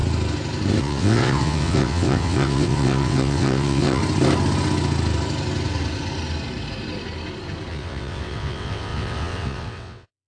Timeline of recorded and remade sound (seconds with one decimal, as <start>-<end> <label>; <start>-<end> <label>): 0.0-0.8 recorded; 0.8-4.0 remade; 4.0-7.7 recorded; 7.7-10.3 remade